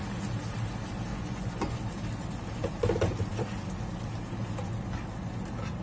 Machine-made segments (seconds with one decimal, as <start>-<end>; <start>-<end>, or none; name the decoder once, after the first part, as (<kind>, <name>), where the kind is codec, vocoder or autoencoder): 1.1-1.8 (vocoder, Vocos)